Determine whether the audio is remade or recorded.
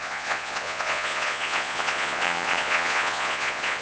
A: remade